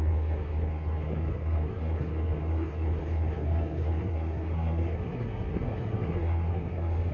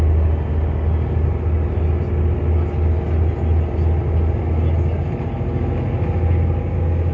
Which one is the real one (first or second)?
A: second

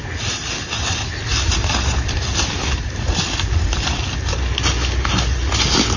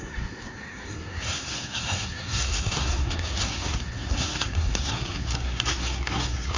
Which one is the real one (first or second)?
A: first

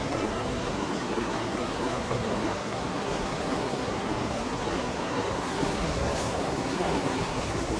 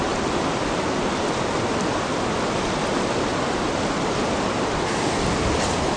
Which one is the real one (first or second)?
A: second